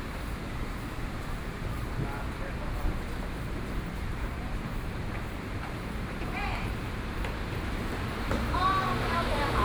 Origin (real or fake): fake